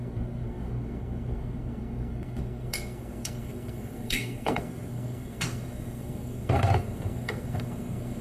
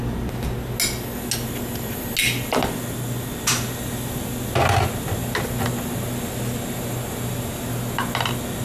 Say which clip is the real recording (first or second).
second